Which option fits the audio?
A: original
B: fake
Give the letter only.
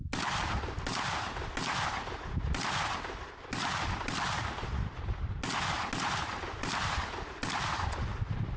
A